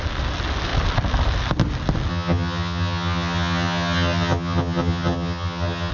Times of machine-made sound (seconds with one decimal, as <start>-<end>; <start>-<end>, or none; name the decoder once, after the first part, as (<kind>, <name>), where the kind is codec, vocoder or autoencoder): 2.1-5.9 (vocoder, HiFi-GAN)